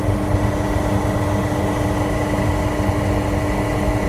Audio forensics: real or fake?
real